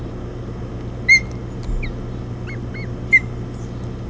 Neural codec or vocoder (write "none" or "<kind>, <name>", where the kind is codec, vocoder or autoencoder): none